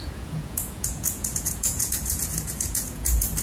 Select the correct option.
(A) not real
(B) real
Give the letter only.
A